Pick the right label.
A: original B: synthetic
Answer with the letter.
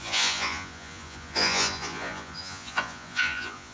B